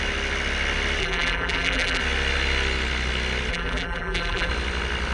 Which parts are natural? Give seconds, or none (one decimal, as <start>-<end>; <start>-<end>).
0.0-1.0; 2.0-3.5; 4.5-5.1

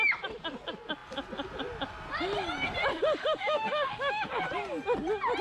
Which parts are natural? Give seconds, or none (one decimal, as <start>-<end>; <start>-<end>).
0.0-2.9; 4.3-5.4

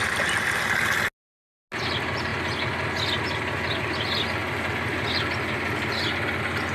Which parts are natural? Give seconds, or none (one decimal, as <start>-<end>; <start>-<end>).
0.0-6.7